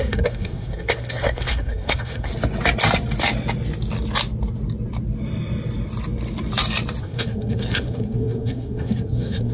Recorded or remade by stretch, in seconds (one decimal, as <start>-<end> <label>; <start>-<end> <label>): 0.0-2.3 remade; 2.3-7.0 recorded; 7.0-9.5 remade

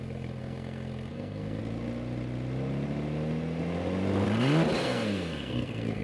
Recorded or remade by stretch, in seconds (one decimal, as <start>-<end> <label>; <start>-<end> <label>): 0.0-1.6 remade; 1.6-4.8 recorded; 4.8-6.0 remade